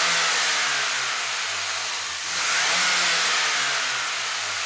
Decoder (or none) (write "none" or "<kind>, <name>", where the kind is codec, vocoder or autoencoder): none